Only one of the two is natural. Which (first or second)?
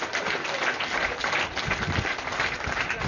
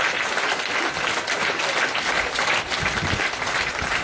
first